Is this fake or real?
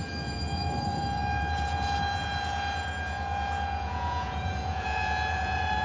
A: fake